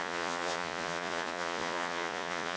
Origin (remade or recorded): remade